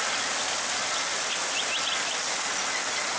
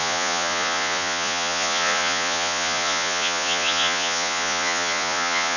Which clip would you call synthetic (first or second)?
second